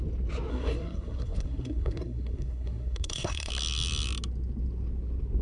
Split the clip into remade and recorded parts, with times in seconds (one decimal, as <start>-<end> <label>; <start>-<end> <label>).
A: 0.0-0.5 recorded; 0.5-3.5 remade; 3.5-5.4 recorded